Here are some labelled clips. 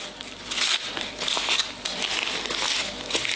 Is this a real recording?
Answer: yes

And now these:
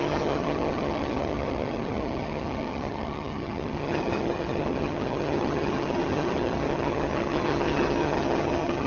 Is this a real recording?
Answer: no